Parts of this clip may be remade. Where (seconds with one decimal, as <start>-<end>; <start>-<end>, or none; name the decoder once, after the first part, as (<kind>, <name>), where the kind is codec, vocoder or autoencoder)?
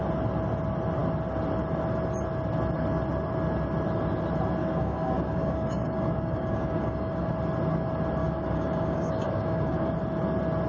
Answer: 4.6-7.3 (codec, DAC); 8.2-9.9